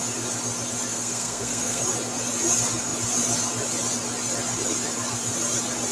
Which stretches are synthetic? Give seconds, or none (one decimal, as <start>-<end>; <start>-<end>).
0.9-1.8